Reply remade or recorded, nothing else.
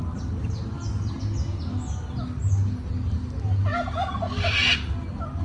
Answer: recorded